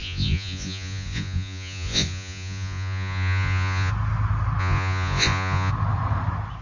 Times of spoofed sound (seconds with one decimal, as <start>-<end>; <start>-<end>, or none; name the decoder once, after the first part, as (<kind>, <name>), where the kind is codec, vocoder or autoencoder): 0.0-3.9 (vocoder, Vocos); 4.6-5.7